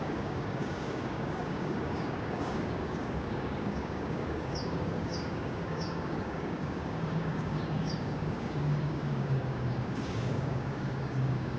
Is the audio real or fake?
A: fake